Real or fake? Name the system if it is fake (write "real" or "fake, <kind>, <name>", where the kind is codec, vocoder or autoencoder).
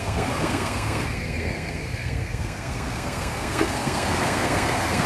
fake, codec, SNAC